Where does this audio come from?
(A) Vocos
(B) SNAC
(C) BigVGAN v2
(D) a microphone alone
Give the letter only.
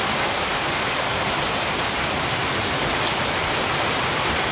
D